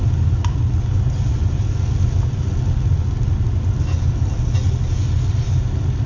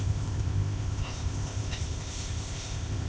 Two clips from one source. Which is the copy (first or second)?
second